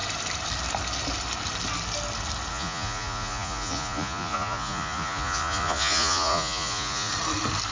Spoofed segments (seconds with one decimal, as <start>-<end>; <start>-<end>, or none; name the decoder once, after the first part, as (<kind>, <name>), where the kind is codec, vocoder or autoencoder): 2.5-7.1 (vocoder, Vocos)